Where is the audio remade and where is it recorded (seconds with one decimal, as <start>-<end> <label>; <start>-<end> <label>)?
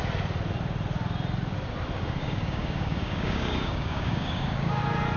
0.0-2.2 recorded; 2.2-4.8 remade; 4.8-5.2 recorded